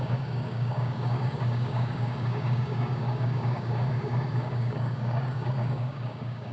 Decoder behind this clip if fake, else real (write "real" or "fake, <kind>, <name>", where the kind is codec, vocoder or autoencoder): fake, codec, DAC